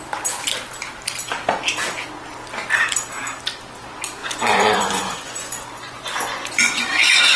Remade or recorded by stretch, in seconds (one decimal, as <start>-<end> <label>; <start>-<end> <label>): 0.0-4.2 recorded; 4.2-7.4 remade